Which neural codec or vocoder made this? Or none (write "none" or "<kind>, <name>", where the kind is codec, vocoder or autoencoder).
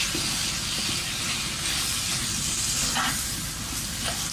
none